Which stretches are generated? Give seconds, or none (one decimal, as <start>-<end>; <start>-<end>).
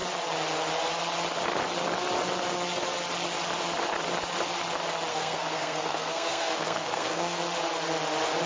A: 5.1-7.4